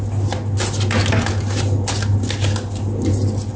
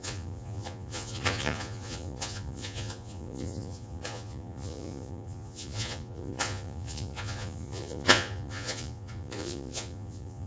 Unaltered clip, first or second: first